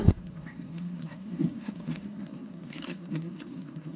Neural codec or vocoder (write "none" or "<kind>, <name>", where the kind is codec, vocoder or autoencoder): codec, SNAC